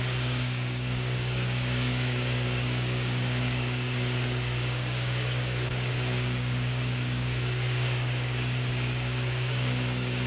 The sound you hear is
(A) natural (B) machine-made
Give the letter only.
B